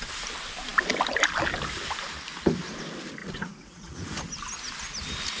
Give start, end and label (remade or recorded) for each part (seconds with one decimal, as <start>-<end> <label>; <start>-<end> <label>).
0.0-3.2 recorded; 3.2-4.2 remade; 4.2-5.4 recorded